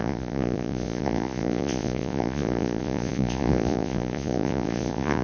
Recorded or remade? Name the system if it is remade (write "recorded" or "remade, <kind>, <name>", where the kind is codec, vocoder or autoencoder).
remade, vocoder, Vocos